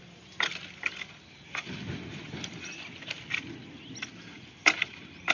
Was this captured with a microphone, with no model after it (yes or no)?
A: yes